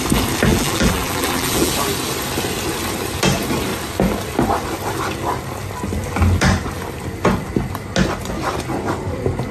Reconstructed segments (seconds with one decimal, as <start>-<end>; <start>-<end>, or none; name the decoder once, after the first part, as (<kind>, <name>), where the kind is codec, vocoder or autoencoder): 0.5-1.7 (vocoder, BigVGAN v2)